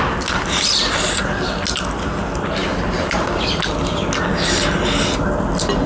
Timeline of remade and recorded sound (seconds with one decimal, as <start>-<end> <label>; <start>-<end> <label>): 0.0-5.9 recorded